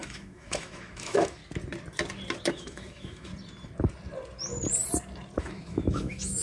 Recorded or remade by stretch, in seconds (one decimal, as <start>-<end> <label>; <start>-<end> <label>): 0.0-1.4 remade; 1.4-2.5 recorded; 2.5-3.3 remade; 3.3-5.4 recorded; 5.4-6.4 remade

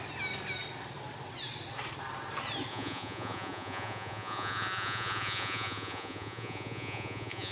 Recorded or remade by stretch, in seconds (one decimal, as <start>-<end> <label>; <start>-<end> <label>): 0.0-2.7 recorded; 2.7-7.5 remade

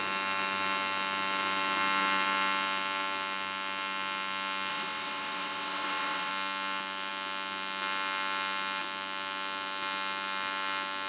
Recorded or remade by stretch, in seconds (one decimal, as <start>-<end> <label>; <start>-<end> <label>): 0.0-4.7 recorded; 4.7-6.3 remade; 6.3-11.1 recorded

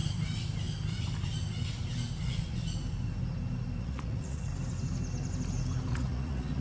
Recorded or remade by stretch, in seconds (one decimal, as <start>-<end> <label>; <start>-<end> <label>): 0.0-2.2 recorded; 2.2-2.6 remade; 2.6-3.8 recorded; 3.8-4.5 remade; 4.5-5.9 recorded; 5.9-6.6 remade